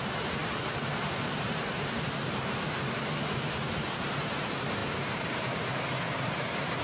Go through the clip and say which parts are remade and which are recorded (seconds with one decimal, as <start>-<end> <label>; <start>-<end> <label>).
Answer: 0.0-0.4 recorded; 0.4-3.7 remade; 3.7-6.8 recorded